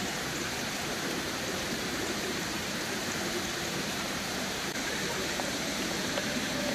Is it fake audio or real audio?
fake